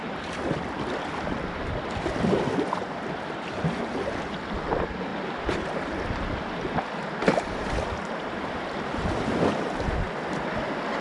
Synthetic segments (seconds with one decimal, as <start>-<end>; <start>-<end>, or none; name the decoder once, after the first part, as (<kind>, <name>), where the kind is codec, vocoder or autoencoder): 0.0-3.8 (vocoder, BigVGAN v2); 5.1-5.9; 7.2-9.8